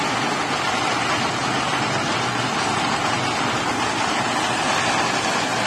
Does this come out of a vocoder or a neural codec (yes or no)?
no